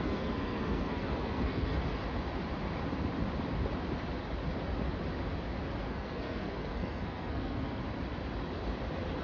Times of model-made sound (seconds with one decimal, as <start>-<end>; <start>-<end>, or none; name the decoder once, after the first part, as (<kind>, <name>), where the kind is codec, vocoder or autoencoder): 0.0-1.8 (codec, SNAC); 5.8-7.8